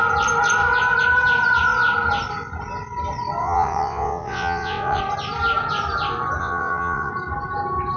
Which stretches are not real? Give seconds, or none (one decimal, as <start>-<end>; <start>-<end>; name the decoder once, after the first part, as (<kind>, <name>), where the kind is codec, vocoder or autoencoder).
3.4-5.0 (vocoder, WaveNeXt); 6.4-7.1